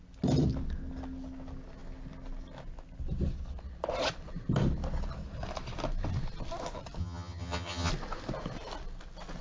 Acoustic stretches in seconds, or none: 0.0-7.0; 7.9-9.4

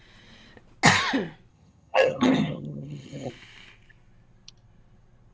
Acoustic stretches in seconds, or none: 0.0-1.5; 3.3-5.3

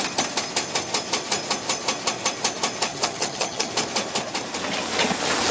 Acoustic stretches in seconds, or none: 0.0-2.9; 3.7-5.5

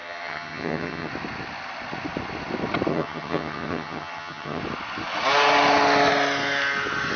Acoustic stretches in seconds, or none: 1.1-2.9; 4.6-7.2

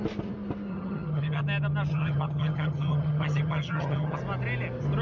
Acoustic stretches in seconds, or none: 0.0-0.7; 1.4-1.9; 4.2-5.0